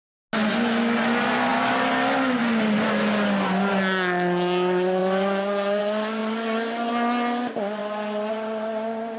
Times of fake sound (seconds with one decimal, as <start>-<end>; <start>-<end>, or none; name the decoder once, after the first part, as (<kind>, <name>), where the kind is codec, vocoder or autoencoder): none